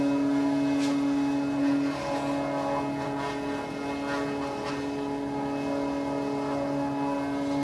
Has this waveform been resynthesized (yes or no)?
no